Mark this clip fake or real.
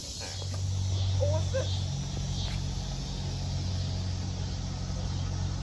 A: real